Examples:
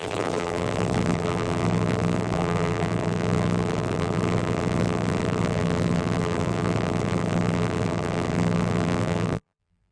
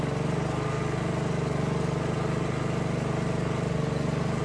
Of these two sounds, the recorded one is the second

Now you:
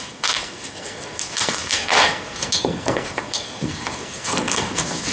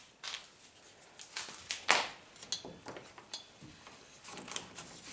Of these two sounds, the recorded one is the second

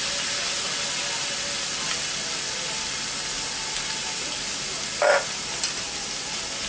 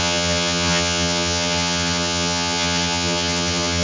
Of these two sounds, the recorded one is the first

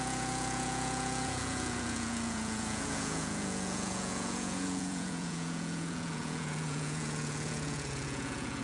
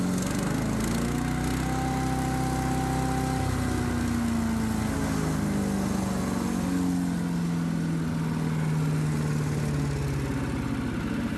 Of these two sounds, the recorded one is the second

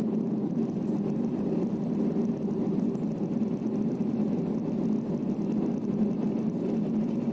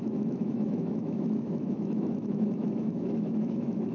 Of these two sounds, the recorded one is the first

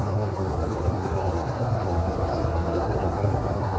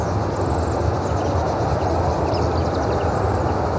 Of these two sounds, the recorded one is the second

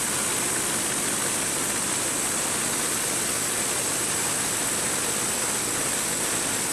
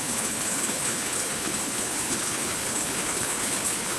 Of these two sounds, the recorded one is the first